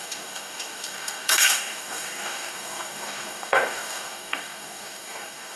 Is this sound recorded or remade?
remade